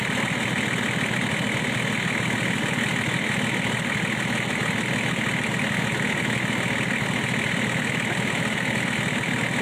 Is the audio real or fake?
real